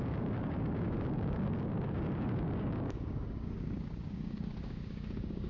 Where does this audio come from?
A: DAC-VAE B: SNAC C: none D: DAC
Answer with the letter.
D